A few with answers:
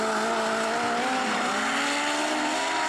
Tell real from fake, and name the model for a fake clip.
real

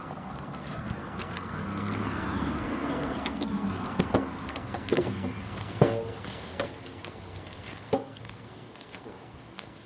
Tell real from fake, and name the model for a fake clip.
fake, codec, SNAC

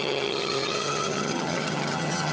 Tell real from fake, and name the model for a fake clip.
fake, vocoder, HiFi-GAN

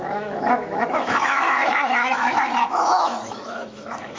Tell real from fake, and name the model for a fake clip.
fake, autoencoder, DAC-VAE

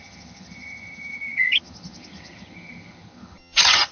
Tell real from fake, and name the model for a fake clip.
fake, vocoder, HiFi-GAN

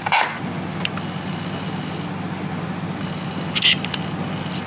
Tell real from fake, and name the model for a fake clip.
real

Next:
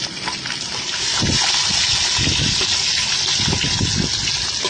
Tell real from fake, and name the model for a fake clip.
real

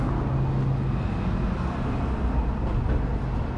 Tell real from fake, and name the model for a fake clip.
real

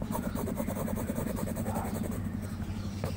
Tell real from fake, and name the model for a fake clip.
fake, vocoder, BigVGAN v2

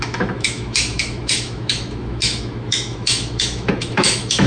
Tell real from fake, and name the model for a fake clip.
fake, autoencoder, DAC-VAE